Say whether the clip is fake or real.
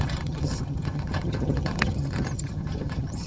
fake